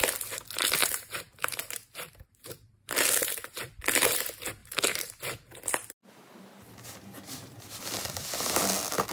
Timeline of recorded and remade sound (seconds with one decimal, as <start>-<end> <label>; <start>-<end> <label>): 0.0-0.8 recorded; 0.8-3.6 remade; 3.6-4.6 recorded; 4.6-5.1 remade; 5.1-6.0 recorded; 6.0-7.8 remade; 7.8-9.1 recorded